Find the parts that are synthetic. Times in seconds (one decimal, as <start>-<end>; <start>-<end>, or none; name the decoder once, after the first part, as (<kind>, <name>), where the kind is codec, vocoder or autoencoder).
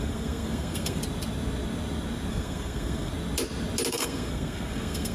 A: 0.0-1.0 (codec, SNAC); 2.3-3.1; 3.9-5.1